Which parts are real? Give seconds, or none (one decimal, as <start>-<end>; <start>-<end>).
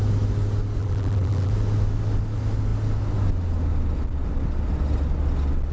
0.0-0.8; 1.5-5.7